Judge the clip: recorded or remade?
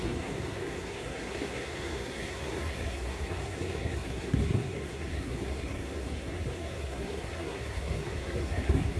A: remade